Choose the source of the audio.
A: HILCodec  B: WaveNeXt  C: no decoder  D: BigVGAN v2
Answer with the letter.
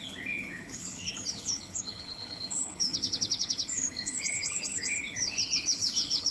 A